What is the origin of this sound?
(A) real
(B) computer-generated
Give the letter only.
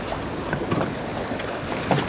A